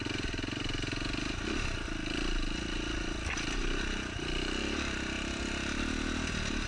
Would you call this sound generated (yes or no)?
no